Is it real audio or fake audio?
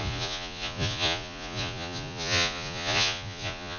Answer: fake